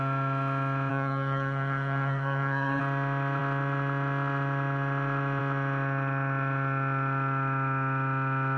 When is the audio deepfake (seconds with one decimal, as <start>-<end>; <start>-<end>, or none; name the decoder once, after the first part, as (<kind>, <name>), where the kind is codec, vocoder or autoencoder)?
0.9-2.8 (codec, SNAC)